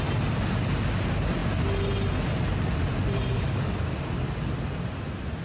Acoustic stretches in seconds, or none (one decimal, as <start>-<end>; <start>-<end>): 0.0-5.4